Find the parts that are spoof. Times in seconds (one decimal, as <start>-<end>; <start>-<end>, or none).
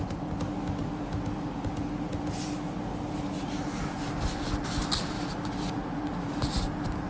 none